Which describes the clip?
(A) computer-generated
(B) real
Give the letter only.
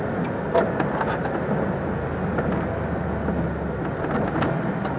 B